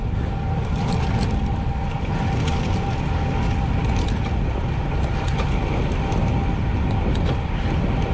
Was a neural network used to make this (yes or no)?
no